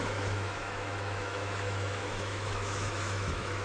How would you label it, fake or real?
fake